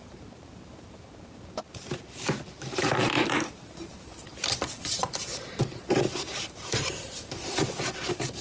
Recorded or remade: remade